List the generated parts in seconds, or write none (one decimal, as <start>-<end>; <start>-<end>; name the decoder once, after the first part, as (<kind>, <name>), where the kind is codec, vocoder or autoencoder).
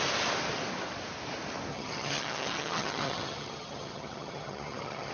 1.7-5.1 (vocoder, HiFi-GAN)